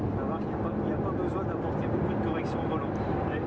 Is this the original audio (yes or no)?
no